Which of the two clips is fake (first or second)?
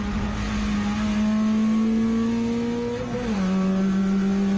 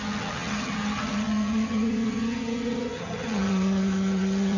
second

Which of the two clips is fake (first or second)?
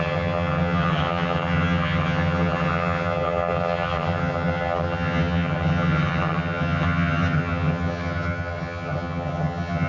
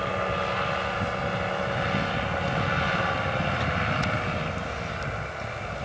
first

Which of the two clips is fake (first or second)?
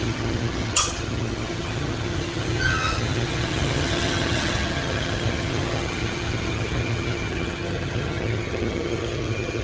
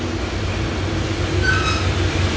first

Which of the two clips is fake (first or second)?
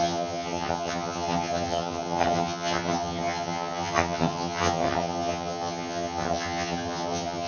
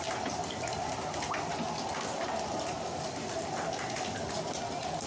first